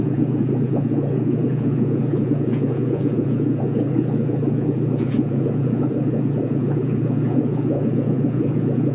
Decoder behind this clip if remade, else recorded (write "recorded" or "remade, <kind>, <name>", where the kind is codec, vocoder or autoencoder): remade, vocoder, Vocos